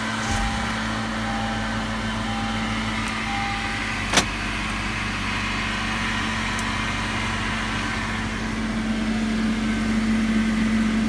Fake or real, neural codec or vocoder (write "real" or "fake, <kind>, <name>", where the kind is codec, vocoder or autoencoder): real